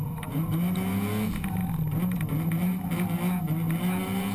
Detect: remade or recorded recorded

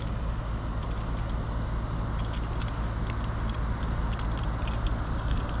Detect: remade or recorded recorded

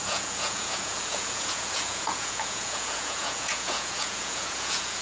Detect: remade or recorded remade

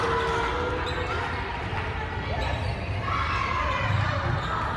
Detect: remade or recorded recorded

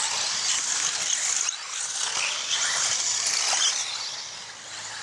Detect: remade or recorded recorded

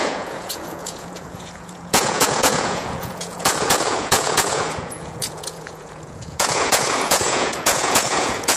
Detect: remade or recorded remade